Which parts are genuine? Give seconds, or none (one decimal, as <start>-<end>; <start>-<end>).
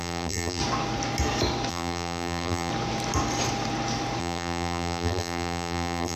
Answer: 0.6-1.7; 2.7-4.2